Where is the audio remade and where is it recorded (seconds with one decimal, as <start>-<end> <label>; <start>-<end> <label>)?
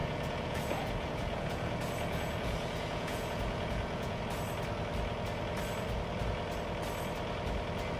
0.0-4.2 remade; 4.2-8.0 recorded